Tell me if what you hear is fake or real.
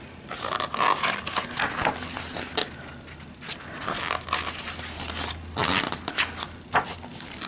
real